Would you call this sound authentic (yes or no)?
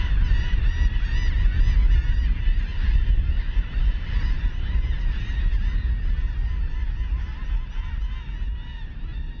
yes